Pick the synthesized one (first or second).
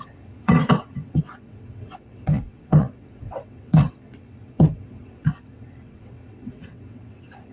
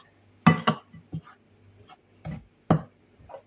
first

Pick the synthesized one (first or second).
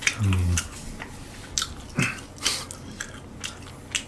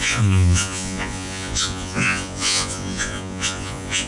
second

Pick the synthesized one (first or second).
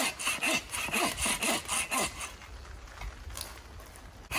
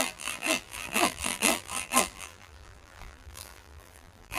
second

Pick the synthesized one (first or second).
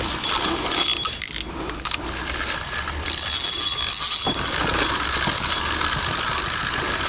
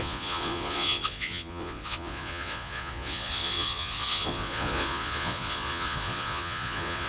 second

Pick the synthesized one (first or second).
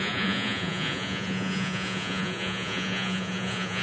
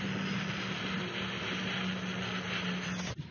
first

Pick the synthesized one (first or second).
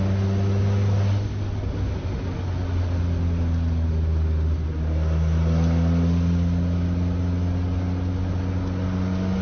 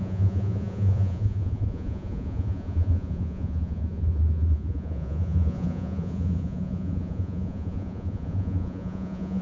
second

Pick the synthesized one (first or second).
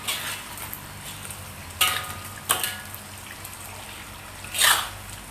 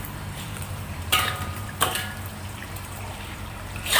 second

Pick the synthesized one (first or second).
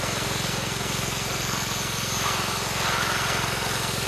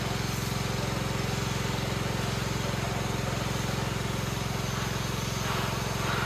first